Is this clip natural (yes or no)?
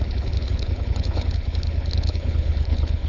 no